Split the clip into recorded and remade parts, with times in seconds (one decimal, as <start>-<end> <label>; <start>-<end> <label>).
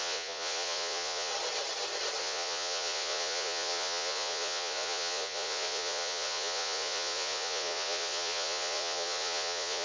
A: 0.0-1.3 remade; 1.3-2.2 recorded; 2.2-9.8 remade